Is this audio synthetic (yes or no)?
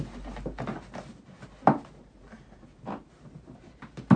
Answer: no